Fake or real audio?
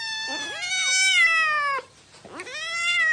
real